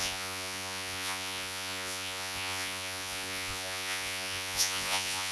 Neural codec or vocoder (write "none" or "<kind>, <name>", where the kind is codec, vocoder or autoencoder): vocoder, Vocos